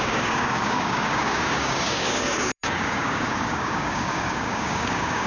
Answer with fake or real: fake